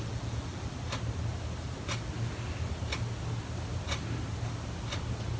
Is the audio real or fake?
real